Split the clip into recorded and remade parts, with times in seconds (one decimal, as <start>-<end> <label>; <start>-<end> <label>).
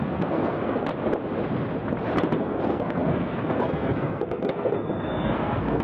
0.0-0.9 remade; 0.9-2.4 recorded; 2.4-5.8 remade